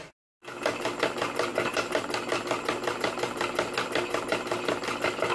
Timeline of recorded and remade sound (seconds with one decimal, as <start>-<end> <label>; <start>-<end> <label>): 0.0-5.3 recorded